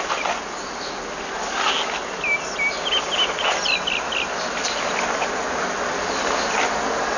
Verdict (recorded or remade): recorded